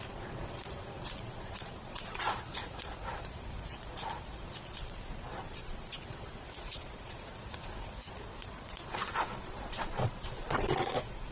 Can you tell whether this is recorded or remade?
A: remade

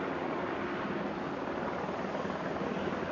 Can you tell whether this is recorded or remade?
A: recorded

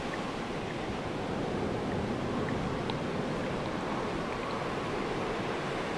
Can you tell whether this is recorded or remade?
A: recorded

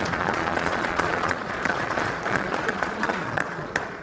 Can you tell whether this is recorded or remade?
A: remade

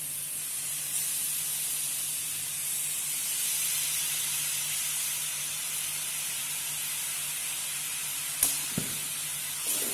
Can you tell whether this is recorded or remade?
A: recorded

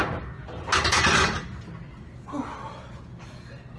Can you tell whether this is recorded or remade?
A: recorded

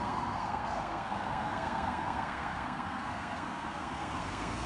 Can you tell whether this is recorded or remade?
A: remade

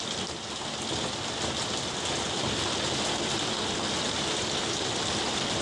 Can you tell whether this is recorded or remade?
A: recorded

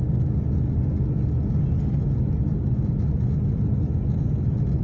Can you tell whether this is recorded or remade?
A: recorded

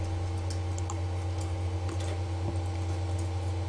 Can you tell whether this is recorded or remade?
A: recorded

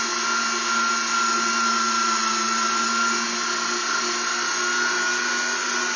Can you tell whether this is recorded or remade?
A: recorded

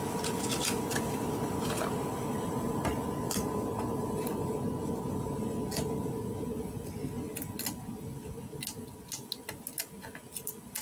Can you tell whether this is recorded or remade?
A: recorded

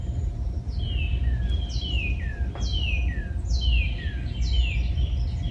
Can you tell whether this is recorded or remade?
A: recorded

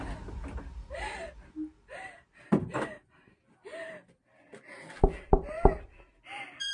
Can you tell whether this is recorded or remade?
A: recorded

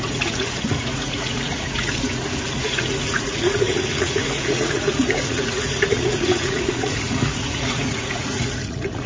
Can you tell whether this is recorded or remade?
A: remade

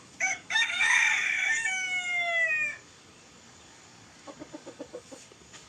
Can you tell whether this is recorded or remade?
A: remade